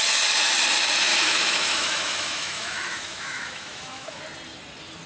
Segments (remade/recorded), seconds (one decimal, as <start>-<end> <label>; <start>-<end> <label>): 0.0-1.1 recorded; 1.1-4.2 remade; 4.2-5.1 recorded